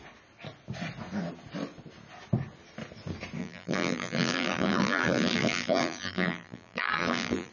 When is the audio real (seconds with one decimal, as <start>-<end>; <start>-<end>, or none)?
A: 0.0-3.4